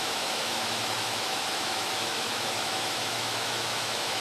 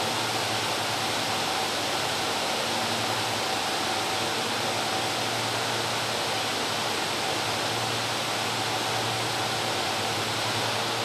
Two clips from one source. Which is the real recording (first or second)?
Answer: second